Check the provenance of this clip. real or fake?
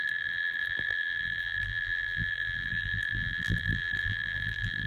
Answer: fake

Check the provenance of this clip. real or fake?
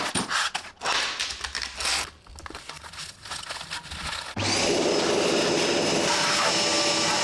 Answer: real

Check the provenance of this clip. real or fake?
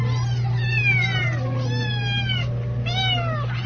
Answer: real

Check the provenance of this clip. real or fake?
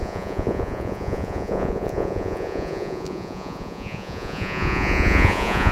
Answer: fake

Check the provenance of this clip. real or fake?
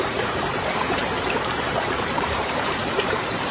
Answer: fake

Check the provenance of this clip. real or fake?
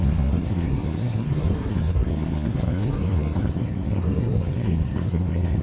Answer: fake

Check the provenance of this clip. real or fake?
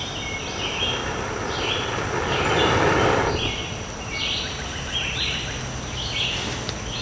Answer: real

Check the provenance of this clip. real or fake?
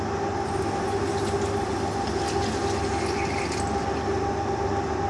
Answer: real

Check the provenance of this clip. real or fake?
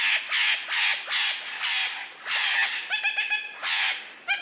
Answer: real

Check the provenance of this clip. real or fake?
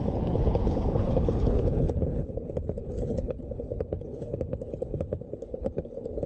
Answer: fake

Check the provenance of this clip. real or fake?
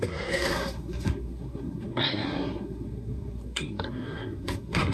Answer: fake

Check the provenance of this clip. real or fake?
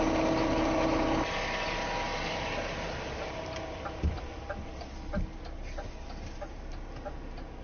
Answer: real